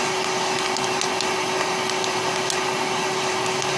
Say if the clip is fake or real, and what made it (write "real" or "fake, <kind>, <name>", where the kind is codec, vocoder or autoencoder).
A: real